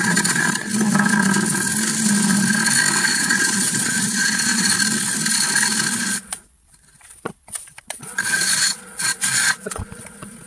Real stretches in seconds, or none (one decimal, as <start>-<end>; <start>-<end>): 0.7-3.0; 4.7-5.9